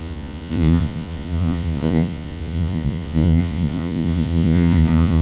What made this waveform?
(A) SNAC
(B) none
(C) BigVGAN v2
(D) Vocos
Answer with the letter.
D